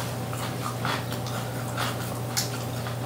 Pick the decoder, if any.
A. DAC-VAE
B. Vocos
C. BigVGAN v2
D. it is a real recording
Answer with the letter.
D